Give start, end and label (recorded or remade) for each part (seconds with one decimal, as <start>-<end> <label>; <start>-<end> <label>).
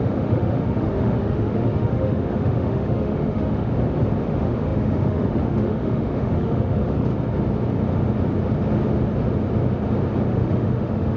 0.0-3.7 remade; 3.7-4.2 recorded; 4.2-7.1 remade; 7.1-10.3 recorded; 10.3-11.2 remade